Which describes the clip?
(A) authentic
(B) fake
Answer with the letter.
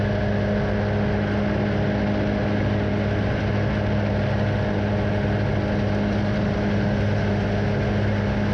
A